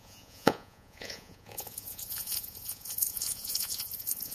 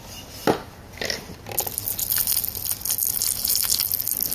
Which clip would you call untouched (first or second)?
second